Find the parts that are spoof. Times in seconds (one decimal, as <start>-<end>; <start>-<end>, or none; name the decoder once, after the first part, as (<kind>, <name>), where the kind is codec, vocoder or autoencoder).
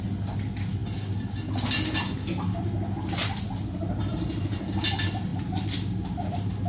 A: none